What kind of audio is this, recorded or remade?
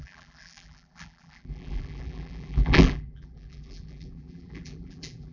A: remade